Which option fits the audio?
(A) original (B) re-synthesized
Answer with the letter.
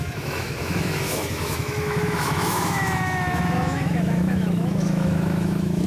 B